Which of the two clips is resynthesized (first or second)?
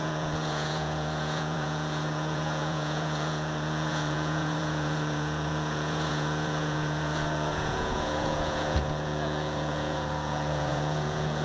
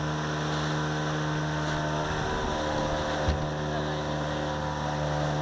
first